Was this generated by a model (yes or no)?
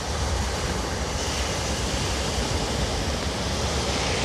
no